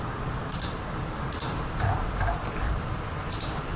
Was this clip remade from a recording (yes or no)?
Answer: yes